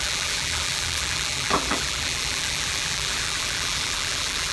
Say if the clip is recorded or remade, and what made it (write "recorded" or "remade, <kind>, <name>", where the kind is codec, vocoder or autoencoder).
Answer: remade, vocoder, BigVGAN v2